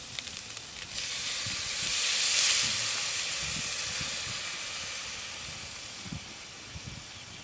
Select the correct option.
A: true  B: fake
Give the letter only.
A